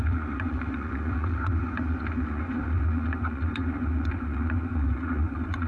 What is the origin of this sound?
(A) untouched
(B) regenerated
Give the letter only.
B